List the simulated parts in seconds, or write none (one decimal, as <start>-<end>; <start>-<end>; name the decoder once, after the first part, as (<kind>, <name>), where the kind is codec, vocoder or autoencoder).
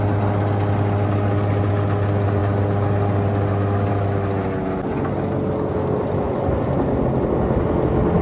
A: none